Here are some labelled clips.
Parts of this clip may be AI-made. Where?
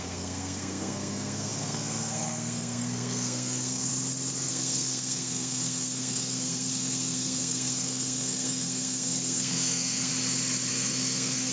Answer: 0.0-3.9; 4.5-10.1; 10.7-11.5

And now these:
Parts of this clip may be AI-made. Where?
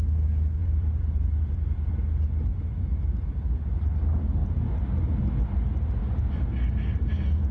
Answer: 0.6-1.9; 2.5-3.9; 4.4-5.3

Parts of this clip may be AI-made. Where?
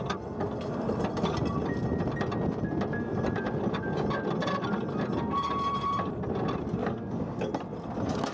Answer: 6.8-7.5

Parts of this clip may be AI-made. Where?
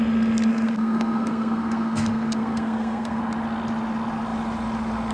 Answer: 0.5-3.2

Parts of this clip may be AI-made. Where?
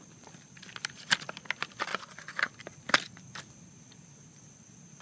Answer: 1.9-2.5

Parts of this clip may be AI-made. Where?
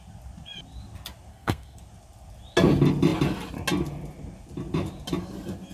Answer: 1.3-1.8